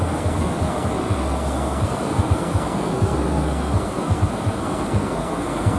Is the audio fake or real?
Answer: fake